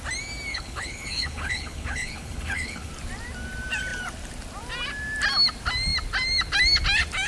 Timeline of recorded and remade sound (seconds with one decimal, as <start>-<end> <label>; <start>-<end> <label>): 0.0-0.5 recorded; 0.5-2.9 remade; 2.9-7.3 recorded